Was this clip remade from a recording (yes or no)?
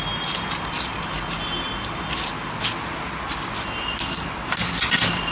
no